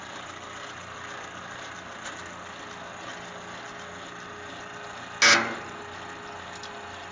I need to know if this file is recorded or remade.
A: recorded